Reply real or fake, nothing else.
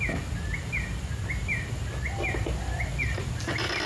real